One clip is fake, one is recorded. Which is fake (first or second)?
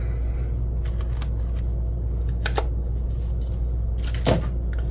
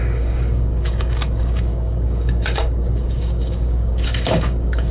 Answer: second